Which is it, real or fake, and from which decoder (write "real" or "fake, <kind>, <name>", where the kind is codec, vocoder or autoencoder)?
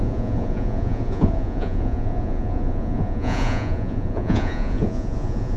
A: fake, vocoder, Vocos